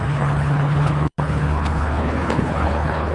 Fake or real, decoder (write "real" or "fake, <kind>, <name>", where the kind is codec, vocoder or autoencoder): fake, codec, HILCodec